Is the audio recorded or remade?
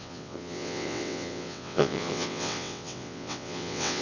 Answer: remade